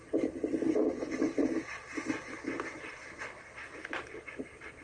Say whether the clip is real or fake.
real